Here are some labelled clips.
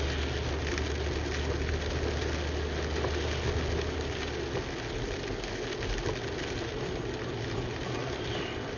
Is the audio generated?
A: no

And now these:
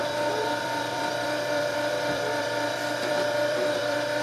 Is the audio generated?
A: yes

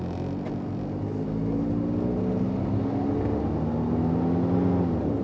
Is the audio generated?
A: no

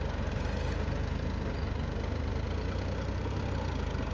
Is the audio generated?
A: no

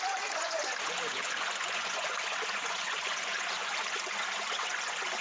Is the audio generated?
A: yes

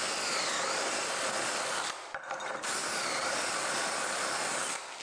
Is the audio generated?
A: no